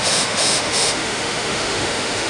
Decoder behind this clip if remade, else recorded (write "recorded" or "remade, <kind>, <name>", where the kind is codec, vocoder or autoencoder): remade, autoencoder, DAC-VAE